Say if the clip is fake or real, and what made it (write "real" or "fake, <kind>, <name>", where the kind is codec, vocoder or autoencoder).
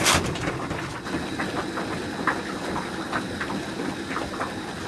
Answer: real